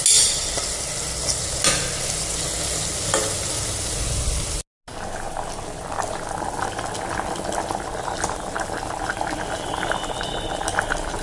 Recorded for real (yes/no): yes